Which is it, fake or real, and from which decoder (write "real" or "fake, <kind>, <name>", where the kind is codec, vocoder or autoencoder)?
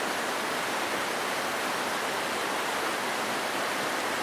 real